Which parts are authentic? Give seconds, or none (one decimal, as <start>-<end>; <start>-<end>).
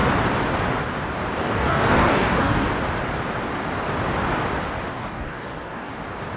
0.0-1.4; 2.7-4.9; 5.9-6.4